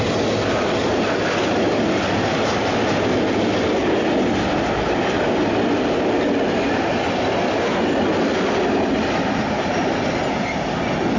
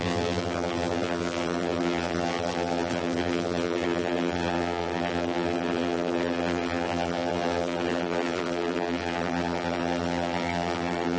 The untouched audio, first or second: first